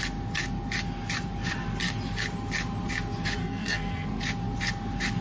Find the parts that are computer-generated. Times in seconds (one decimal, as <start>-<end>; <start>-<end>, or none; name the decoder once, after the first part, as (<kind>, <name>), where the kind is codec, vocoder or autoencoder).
3.4-4.2 (codec, SNAC)